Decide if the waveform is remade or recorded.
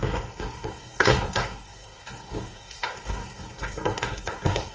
remade